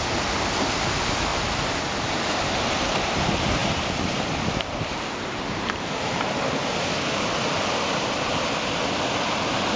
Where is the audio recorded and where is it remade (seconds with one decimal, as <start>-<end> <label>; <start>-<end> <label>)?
0.0-1.3 remade; 1.3-2.9 recorded; 2.9-9.8 remade

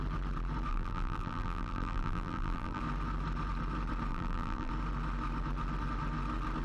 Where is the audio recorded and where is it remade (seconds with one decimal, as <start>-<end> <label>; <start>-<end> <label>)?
0.0-0.7 recorded; 0.7-2.8 remade; 2.8-4.1 recorded; 4.1-4.7 remade; 4.7-6.6 recorded

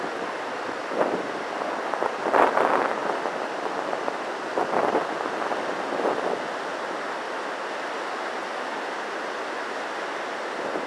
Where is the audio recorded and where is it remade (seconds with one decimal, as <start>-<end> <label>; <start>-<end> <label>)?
0.0-3.0 recorded; 3.0-4.8 remade; 4.8-10.9 recorded

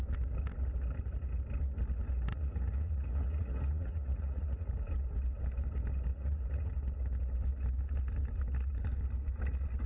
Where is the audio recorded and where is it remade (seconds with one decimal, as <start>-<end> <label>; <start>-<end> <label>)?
0.0-2.3 recorded; 2.3-4.7 remade; 4.7-6.1 recorded; 6.1-6.7 remade; 6.7-9.9 recorded

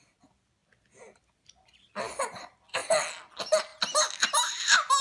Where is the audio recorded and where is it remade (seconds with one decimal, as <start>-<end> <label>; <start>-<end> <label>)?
0.0-5.0 recorded

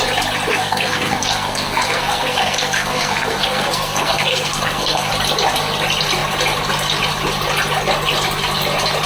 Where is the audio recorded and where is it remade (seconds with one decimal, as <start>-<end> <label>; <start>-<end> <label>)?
0.0-0.5 recorded; 0.5-5.1 remade; 5.1-9.1 recorded